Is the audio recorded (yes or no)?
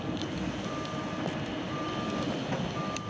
yes